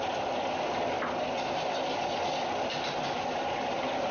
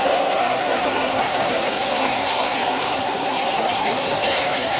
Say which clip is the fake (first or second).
second